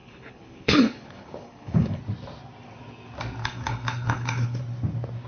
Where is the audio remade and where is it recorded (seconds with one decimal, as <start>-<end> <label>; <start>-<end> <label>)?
0.0-2.0 remade; 2.0-3.4 recorded; 3.4-4.6 remade; 4.6-5.3 recorded